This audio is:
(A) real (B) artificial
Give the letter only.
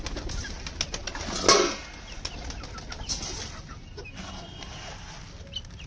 A